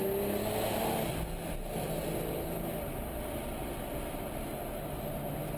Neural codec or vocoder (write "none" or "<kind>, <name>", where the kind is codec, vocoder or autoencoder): none